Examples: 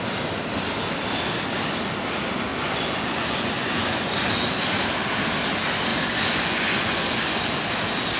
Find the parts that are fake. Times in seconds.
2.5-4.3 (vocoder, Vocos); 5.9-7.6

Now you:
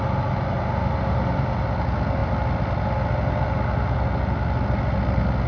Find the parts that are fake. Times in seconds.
none